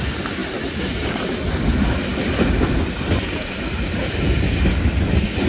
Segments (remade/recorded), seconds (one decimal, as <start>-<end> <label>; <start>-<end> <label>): 0.0-5.5 recorded